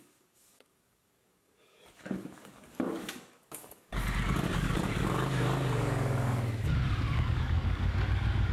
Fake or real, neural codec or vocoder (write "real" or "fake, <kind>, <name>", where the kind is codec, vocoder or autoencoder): fake, codec, DAC